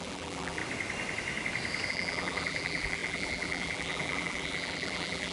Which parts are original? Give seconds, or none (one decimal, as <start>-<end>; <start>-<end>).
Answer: 0.6-1.9

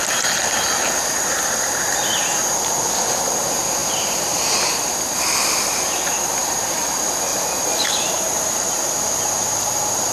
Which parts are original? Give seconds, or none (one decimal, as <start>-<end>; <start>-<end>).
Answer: 0.6-7.3; 8.9-10.1

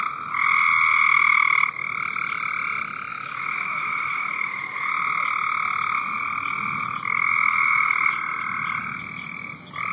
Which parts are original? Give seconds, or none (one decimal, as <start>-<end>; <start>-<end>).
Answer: 0.0-3.1; 4.9-9.9

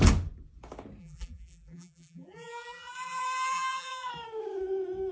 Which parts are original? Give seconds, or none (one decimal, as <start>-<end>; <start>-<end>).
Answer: 0.0-1.0; 4.1-5.1

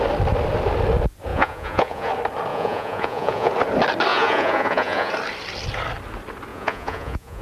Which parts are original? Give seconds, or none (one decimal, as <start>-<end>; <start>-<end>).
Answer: 0.0-1.3; 2.1-2.5; 3.5-4.1; 5.1-6.5

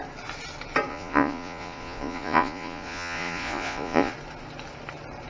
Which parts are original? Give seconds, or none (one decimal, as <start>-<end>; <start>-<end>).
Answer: 0.0-0.9; 4.1-5.3

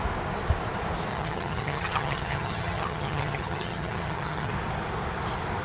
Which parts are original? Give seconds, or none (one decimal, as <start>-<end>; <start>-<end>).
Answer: 0.0-1.1; 4.5-5.6